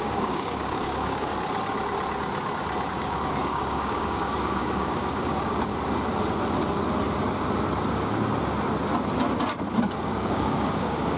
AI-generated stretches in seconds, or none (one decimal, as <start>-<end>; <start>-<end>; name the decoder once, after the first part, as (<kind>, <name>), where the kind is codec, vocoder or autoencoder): 0.0-1.3 (codec, DAC); 2.9-5.7; 9.9-11.2